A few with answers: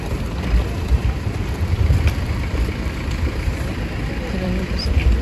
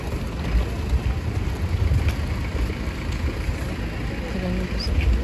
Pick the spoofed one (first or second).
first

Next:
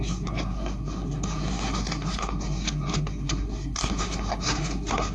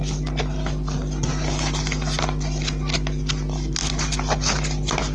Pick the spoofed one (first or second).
first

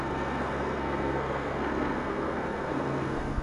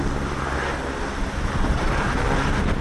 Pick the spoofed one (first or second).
first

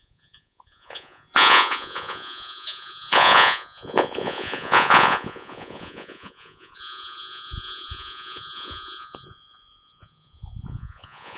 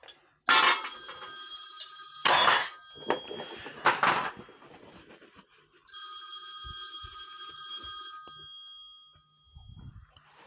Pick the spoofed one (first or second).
first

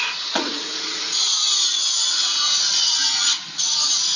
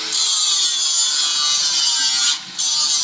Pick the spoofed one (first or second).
first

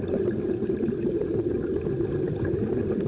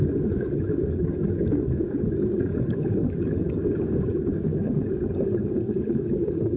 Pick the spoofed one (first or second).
second